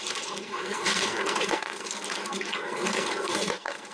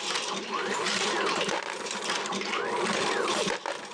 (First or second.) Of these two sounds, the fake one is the first